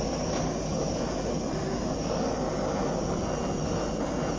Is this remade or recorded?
recorded